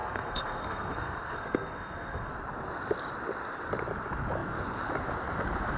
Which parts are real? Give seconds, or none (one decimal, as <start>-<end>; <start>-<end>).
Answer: 2.3-5.8